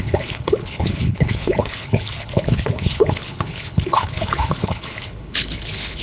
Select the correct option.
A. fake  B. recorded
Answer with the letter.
A